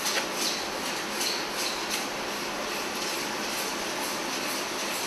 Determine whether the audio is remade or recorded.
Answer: recorded